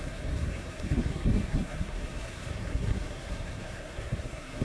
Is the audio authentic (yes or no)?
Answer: no